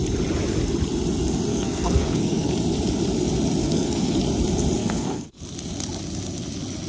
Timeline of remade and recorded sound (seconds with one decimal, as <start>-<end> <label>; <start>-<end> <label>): 0.0-1.5 recorded; 1.5-2.5 remade; 2.5-3.6 recorded; 3.6-4.2 remade; 4.2-4.8 recorded; 4.8-5.4 remade; 5.4-6.9 recorded